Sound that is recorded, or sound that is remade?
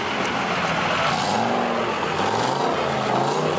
recorded